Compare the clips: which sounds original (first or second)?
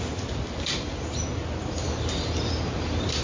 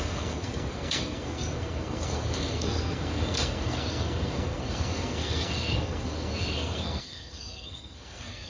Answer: first